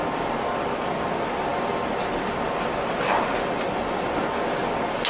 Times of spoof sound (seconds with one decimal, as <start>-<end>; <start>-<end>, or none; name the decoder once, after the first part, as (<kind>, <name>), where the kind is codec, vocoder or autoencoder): none

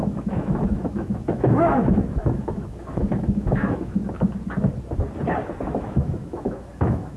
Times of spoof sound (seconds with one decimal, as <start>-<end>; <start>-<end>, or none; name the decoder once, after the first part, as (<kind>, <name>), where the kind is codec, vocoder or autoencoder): 0.0-4.0 (autoencoder, DAC-VAE); 5.8-7.2

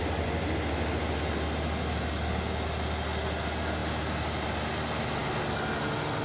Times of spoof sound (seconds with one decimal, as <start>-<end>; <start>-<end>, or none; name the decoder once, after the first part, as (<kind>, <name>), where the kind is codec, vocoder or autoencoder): none

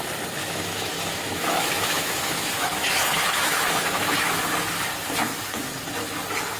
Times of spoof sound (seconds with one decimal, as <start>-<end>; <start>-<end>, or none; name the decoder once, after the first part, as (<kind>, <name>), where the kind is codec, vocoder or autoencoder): 0.4-4.4 (autoencoder, DAC-VAE)

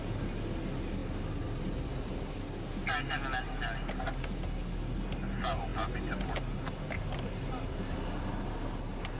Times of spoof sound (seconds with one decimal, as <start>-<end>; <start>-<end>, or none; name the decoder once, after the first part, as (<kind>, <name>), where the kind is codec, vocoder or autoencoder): none